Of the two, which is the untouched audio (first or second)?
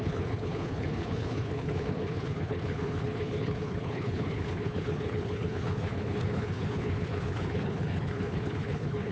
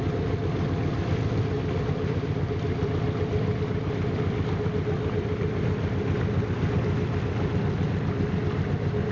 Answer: second